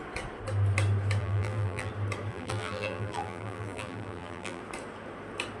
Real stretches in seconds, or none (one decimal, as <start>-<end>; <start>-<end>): 0.0-1.2; 1.9-2.3; 4.6-5.6